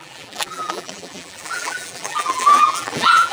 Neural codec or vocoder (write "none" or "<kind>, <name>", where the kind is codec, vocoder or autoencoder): vocoder, BigVGAN v2